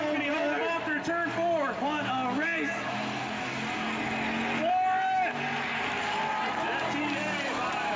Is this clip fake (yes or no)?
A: no